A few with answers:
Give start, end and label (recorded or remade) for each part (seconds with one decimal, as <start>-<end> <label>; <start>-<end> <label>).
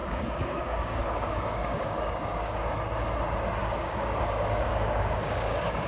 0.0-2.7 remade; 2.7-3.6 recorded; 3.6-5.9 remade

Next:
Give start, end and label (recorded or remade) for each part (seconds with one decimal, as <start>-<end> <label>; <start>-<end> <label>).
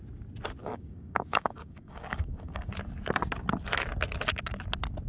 0.0-0.6 recorded; 0.6-2.7 remade; 2.7-5.1 recorded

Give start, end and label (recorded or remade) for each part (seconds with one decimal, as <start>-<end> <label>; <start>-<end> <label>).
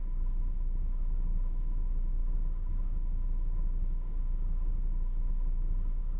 0.0-6.2 remade